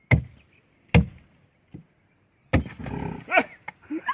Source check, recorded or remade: recorded